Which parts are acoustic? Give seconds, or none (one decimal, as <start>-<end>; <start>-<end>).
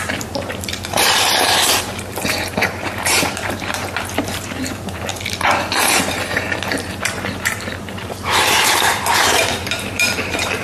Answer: 5.1-6.9